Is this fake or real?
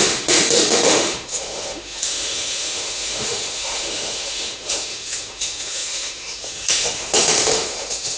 fake